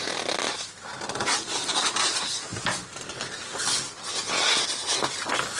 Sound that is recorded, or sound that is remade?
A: recorded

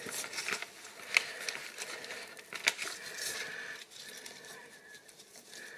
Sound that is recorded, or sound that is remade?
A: recorded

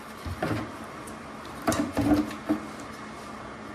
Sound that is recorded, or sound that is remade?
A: recorded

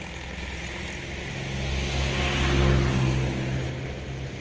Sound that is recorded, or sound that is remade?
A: recorded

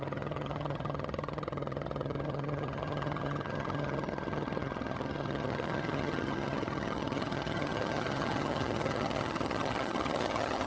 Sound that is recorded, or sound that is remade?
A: remade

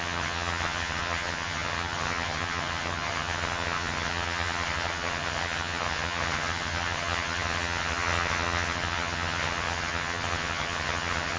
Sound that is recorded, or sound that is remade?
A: remade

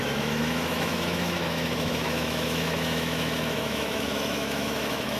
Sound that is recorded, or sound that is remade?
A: remade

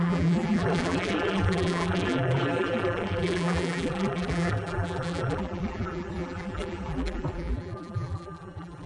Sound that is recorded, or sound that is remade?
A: remade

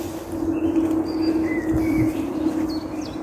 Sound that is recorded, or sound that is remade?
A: recorded